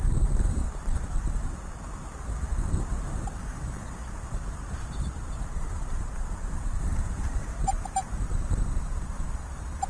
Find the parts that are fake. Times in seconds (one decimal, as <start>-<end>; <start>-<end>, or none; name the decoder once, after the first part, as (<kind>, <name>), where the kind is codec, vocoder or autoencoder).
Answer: 0.0-0.6 (vocoder, BigVGAN v2); 3.4-9.9